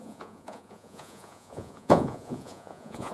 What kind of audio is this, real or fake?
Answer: fake